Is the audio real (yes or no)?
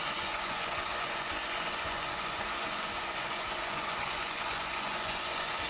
no